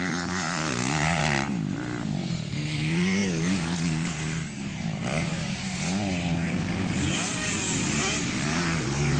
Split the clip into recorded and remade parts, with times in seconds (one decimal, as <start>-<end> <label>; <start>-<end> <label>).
0.0-1.2 remade; 1.2-2.0 recorded; 2.0-9.2 remade